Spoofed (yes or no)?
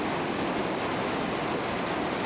no